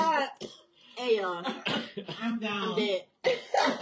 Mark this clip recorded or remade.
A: remade